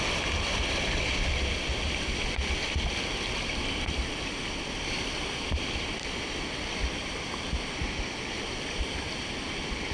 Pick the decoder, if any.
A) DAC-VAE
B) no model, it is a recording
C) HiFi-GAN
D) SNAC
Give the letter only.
B